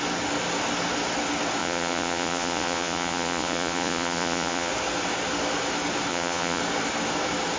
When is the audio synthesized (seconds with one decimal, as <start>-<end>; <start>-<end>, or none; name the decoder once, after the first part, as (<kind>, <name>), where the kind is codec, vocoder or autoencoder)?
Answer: 1.6-4.7 (vocoder, Vocos); 6.1-6.6